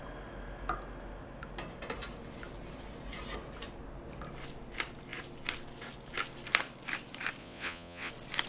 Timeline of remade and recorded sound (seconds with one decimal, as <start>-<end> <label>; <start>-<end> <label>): 0.0-7.4 recorded; 7.4-8.1 remade; 8.1-8.5 recorded